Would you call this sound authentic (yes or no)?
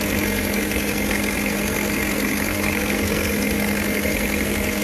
no